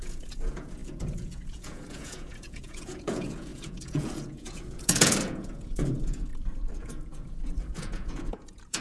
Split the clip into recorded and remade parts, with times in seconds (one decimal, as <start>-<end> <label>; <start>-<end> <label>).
0.0-6.3 remade; 6.3-6.8 recorded; 6.8-8.8 remade